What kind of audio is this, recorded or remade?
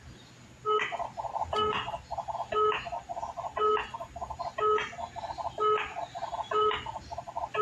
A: recorded